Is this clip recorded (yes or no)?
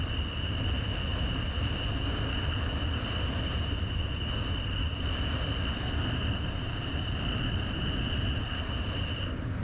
yes